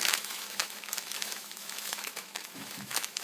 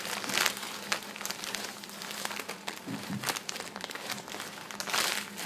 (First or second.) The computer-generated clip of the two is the first